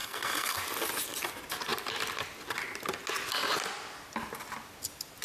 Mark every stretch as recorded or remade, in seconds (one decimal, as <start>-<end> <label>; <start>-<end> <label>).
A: 0.0-0.6 remade; 0.6-5.2 recorded